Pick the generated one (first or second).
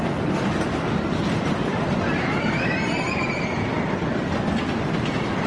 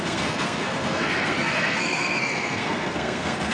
second